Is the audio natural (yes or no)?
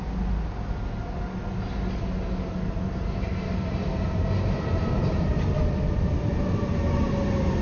yes